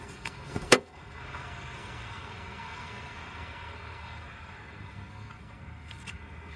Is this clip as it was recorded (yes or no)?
no